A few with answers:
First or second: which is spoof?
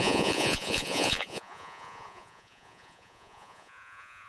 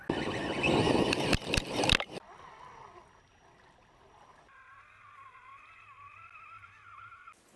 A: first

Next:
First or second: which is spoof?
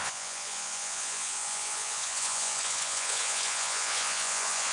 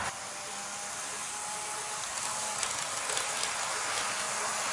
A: first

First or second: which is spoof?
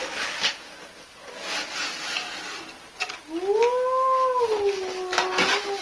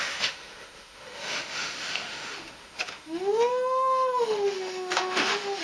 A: second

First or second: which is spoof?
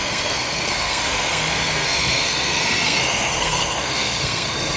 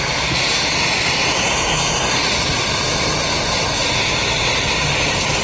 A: first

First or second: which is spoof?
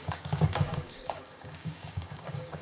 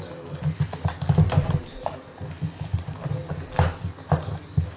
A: first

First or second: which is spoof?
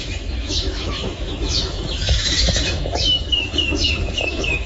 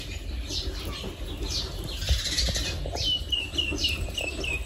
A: first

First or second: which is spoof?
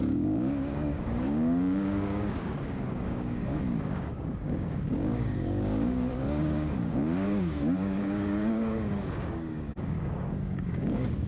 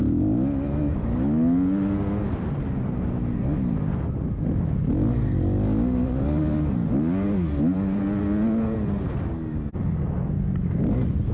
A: first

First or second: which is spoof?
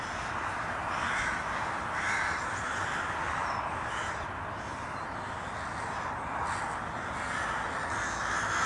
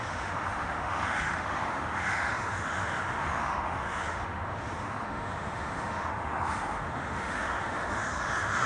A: second